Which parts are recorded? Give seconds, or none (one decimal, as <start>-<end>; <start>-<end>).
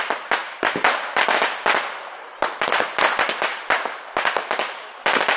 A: 0.0-5.4